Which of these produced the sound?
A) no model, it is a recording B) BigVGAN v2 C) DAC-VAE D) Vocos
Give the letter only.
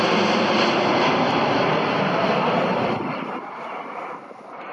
A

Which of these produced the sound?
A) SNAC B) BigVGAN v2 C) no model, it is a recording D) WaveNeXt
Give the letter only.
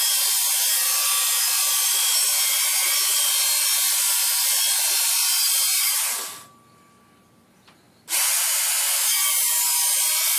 C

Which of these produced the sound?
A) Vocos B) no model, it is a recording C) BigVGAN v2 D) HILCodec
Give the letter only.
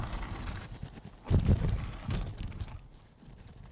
C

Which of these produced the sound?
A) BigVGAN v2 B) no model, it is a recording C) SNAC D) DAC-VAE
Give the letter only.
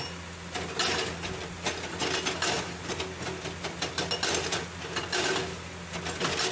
B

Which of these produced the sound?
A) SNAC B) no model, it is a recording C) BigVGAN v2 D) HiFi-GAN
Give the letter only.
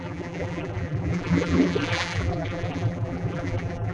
C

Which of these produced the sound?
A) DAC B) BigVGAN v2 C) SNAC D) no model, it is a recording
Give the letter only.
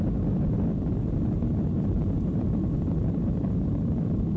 B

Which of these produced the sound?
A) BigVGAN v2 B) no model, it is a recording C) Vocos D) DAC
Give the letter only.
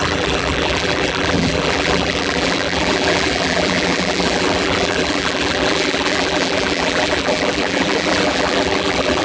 A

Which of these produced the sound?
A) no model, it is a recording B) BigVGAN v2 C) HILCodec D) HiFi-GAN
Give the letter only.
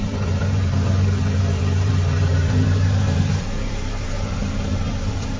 B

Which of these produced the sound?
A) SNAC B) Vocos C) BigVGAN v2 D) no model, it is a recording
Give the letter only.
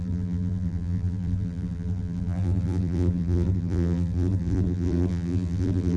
C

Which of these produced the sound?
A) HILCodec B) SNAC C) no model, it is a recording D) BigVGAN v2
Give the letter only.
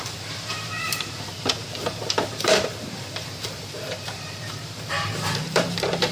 D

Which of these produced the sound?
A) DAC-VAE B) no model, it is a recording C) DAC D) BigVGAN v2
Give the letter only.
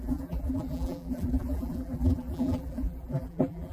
D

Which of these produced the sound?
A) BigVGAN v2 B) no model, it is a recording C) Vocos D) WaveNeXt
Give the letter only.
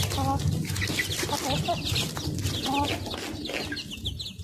B